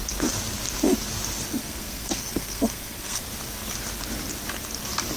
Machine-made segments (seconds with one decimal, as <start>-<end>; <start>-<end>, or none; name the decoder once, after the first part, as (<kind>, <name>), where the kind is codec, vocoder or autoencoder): 1.6-3.2 (codec, SNAC)